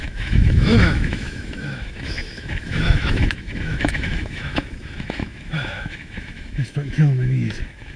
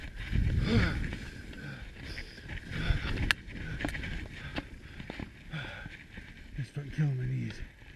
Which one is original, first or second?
second